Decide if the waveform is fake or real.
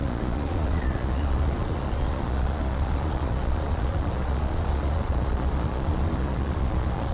fake